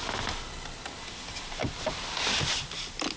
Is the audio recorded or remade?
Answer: recorded